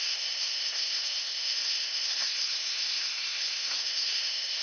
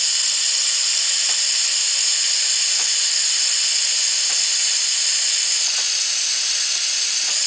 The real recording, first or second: second